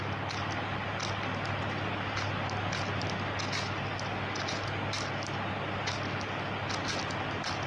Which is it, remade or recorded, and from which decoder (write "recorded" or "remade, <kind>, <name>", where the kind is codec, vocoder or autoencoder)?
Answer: recorded